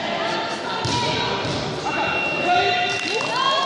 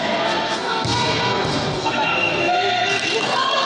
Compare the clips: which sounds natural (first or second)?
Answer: first